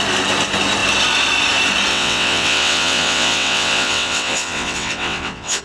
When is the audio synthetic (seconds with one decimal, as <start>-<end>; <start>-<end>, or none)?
1.9-5.6